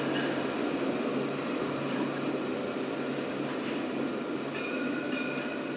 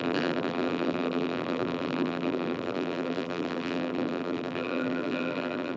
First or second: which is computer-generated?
second